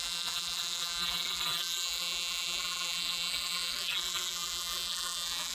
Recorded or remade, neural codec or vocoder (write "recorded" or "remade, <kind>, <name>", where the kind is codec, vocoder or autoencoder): remade, vocoder, BigVGAN v2